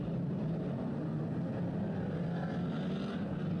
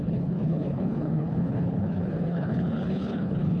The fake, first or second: second